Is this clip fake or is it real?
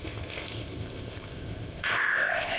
fake